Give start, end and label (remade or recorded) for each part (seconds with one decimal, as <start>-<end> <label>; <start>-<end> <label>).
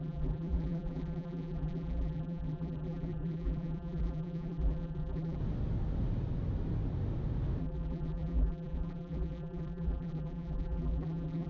0.0-5.4 remade; 5.4-7.6 recorded; 7.6-11.5 remade